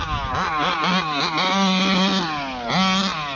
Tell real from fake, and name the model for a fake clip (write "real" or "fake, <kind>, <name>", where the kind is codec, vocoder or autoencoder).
real